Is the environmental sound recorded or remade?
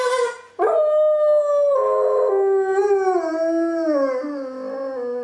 recorded